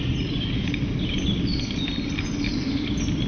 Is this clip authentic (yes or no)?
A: yes